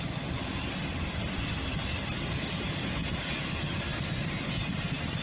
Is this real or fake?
real